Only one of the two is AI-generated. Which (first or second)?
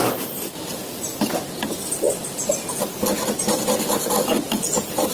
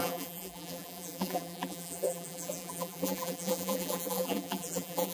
second